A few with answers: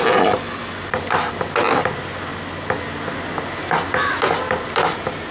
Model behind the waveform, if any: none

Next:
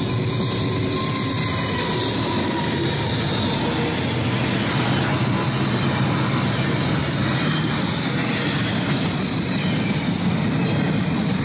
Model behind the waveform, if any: none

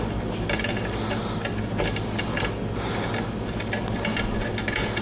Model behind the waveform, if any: none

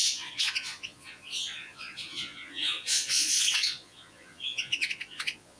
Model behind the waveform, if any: vocoder, Vocos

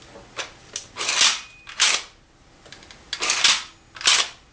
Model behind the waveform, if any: none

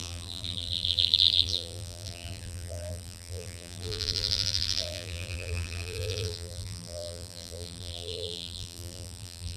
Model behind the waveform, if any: vocoder, BigVGAN v2